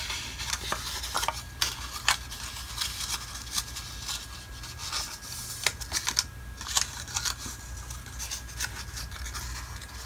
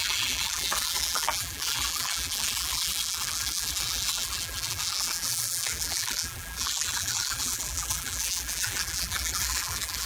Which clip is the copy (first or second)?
second